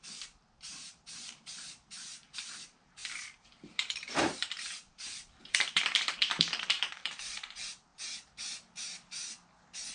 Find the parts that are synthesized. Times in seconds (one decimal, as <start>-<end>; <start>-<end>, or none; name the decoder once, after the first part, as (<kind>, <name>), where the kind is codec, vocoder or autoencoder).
0.0-7.9 (vocoder, BigVGAN v2)